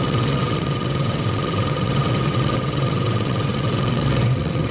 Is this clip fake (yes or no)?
yes